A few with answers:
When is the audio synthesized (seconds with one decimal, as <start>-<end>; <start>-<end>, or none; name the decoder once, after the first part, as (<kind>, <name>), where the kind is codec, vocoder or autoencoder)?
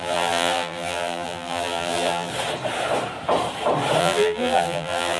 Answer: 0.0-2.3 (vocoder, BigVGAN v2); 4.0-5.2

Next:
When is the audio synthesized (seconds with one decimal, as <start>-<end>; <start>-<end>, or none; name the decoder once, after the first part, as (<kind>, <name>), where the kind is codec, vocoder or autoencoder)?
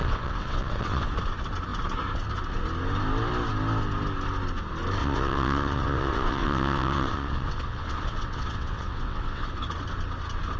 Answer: 0.0-1.1 (vocoder, WaveNeXt); 5.0-9.5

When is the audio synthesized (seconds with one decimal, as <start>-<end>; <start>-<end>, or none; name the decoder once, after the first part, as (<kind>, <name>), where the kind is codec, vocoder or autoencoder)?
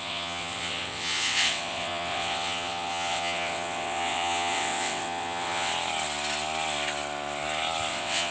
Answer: 0.0-5.7 (vocoder, WaveNeXt); 7.9-8.3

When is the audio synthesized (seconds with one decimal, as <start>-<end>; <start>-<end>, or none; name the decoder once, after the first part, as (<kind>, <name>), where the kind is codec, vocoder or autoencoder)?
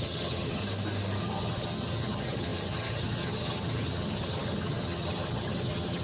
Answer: 0.0-0.6 (vocoder, HiFi-GAN); 1.2-6.0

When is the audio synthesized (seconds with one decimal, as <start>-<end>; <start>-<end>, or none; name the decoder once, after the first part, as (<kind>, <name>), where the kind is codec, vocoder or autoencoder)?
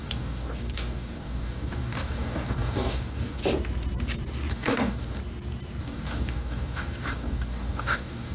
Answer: 0.0-3.4 (codec, DAC); 4.5-5.2; 5.8-8.3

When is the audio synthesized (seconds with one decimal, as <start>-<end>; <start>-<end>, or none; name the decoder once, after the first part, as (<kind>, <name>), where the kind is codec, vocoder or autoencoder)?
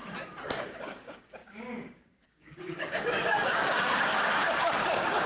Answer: 0.6-5.3 (codec, DAC)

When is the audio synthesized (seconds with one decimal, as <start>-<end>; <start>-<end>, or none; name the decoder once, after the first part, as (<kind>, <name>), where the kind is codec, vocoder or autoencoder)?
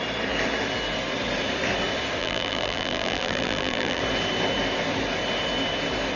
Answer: 2.2-4.0 (vocoder, BigVGAN v2)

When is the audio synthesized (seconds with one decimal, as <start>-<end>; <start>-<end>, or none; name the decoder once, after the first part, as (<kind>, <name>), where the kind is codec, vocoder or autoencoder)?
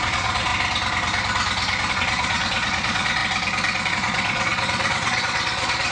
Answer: 0.0-0.5 (vocoder, Vocos); 1.9-3.2; 3.9-5.9